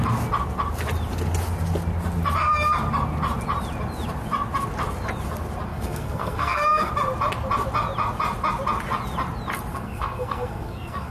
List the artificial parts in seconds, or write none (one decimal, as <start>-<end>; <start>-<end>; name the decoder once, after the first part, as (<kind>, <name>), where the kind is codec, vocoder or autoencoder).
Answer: 5.7-6.9 (codec, SNAC); 9.7-11.1